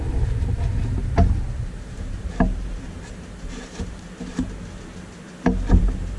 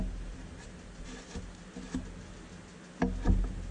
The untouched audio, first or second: second